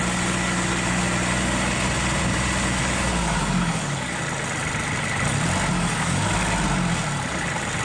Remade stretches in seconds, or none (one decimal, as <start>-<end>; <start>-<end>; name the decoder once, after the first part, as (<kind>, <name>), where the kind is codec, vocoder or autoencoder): 2.8-4.2 (codec, DAC); 5.7-6.3